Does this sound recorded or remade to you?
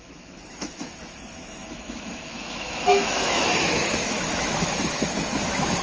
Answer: remade